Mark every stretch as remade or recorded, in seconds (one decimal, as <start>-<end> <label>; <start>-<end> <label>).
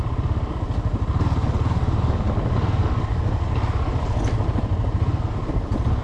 0.0-6.0 recorded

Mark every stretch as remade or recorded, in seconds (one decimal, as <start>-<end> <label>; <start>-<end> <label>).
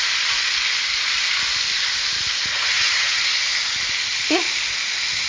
0.0-2.5 recorded; 2.5-3.2 remade; 3.2-5.3 recorded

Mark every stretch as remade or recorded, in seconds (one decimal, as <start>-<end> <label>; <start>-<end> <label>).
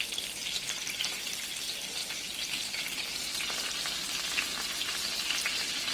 0.0-5.9 recorded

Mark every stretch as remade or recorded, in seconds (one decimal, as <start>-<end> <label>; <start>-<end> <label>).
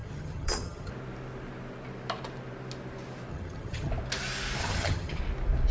0.0-0.9 remade; 0.9-3.3 recorded; 3.3-3.9 remade; 3.9-4.6 recorded; 4.6-5.2 remade; 5.2-5.7 recorded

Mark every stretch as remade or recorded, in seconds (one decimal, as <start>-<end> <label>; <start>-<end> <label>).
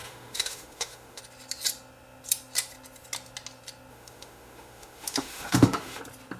0.0-1.2 remade; 1.2-3.9 recorded; 3.9-6.0 remade; 6.0-6.4 recorded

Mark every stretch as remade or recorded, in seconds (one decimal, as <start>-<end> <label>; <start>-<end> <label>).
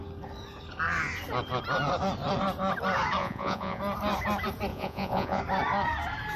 0.0-3.2 recorded; 3.2-3.8 remade; 3.8-4.7 recorded; 4.7-5.4 remade; 5.4-6.4 recorded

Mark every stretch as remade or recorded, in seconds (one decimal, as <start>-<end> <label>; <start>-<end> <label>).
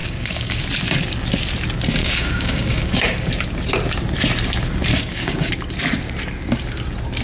0.0-0.6 remade; 0.6-2.0 recorded; 2.0-3.3 remade; 3.3-4.9 recorded; 4.9-5.5 remade; 5.5-7.2 recorded